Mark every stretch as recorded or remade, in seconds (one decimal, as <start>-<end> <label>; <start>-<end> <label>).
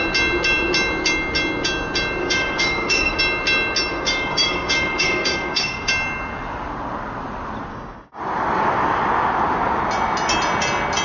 0.0-2.2 recorded; 2.2-3.2 remade; 3.2-3.9 recorded; 3.9-5.9 remade; 5.9-7.7 recorded; 7.7-8.2 remade; 8.2-11.0 recorded